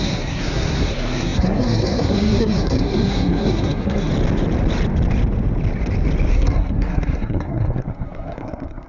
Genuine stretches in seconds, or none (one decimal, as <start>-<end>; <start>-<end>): 4.1-6.3